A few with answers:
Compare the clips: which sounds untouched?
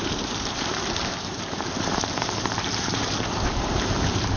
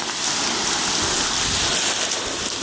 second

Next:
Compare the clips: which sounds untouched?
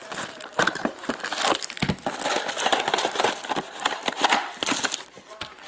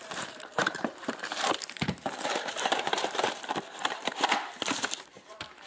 first